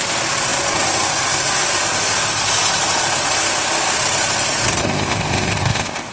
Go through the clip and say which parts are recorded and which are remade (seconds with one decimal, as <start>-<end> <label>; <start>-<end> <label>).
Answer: 0.0-4.8 recorded; 4.8-6.1 remade